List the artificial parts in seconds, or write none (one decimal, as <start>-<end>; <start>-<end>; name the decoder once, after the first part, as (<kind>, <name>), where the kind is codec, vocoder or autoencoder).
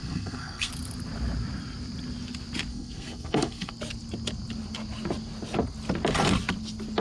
0.0-0.7 (codec, SNAC); 2.7-3.7